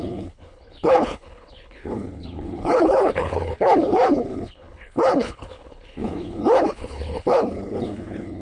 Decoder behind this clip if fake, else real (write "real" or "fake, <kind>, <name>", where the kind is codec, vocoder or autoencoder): fake, codec, HILCodec